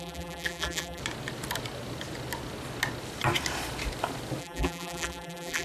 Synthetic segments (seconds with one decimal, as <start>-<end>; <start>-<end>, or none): 0.0-1.0; 4.4-5.6